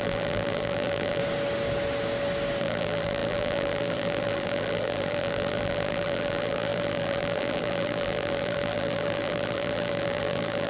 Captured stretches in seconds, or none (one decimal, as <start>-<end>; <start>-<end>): 1.2-2.6